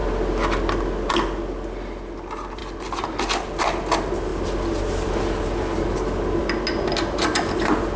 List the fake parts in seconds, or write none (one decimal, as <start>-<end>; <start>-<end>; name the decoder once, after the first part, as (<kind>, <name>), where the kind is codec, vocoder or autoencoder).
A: none